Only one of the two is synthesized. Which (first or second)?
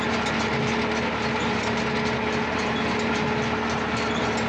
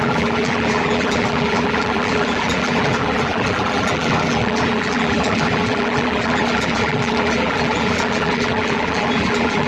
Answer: second